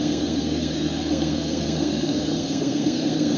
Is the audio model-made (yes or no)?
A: yes